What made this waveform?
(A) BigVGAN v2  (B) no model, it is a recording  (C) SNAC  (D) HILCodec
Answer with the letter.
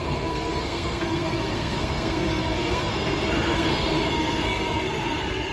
C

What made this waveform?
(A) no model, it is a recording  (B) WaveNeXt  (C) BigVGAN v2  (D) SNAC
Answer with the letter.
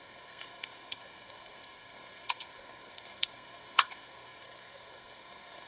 D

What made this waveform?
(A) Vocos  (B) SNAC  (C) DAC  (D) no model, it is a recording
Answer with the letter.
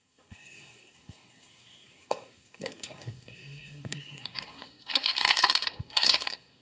B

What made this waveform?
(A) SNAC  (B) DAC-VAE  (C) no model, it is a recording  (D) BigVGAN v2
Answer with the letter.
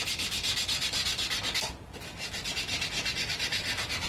C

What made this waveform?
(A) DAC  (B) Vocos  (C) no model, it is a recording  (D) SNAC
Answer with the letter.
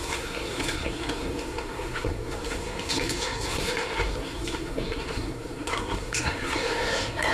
D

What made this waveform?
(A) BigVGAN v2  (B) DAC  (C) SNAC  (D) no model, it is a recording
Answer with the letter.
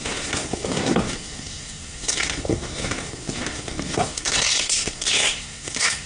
C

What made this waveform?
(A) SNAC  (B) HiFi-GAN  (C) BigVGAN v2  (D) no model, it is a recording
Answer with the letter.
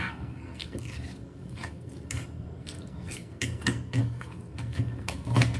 A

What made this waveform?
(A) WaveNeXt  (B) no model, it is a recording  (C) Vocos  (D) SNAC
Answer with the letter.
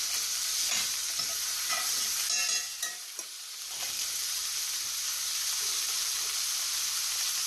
B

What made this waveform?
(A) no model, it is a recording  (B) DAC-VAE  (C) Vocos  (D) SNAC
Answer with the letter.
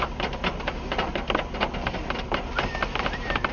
A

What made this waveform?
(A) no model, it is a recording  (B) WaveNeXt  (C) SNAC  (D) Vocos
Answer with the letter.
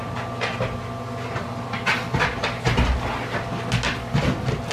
A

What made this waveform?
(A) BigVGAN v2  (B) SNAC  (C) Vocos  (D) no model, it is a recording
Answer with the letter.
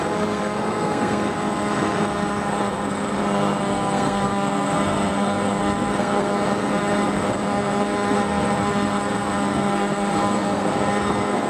B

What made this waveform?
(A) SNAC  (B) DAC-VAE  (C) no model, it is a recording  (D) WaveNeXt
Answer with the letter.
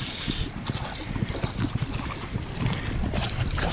C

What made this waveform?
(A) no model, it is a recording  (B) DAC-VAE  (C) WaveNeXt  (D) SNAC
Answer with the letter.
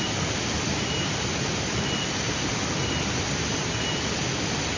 A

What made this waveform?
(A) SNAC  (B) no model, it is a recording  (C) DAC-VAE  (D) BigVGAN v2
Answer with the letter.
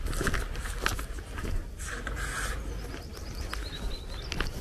B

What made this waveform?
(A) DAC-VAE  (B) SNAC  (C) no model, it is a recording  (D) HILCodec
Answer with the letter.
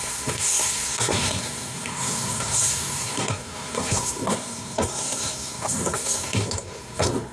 B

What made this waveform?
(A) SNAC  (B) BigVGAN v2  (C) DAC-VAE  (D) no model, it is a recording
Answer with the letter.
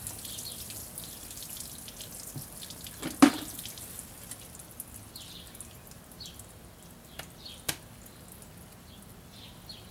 D